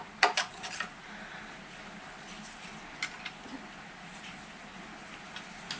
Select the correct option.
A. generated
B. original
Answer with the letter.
B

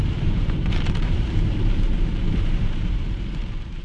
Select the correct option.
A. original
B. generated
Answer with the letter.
B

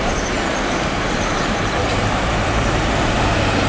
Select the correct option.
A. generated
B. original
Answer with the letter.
A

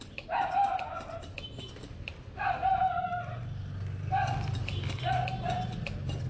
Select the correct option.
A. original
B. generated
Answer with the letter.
A